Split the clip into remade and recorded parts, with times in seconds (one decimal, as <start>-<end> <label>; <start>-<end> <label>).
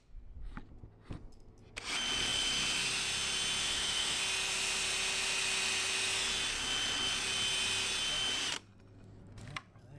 0.0-3.6 recorded; 3.6-4.2 remade; 4.2-10.0 recorded